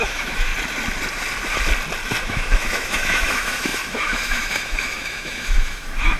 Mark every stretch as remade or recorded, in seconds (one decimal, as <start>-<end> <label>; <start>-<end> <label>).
0.0-0.5 remade; 0.5-2.2 recorded; 2.2-6.2 remade